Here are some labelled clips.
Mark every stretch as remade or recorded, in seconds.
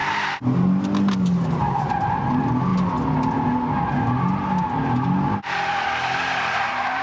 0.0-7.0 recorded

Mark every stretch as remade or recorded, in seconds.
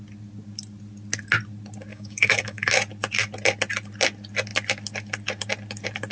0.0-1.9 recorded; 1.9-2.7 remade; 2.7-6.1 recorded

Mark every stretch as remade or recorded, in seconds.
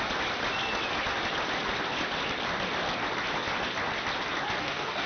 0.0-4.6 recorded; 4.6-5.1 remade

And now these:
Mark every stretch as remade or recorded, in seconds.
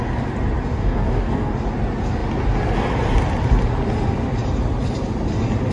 0.0-0.7 recorded; 0.7-1.5 remade; 1.5-5.7 recorded